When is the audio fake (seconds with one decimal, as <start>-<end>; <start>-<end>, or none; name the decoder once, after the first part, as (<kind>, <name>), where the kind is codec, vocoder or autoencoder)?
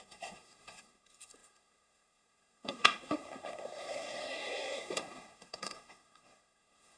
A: 0.0-7.0 (codec, SNAC)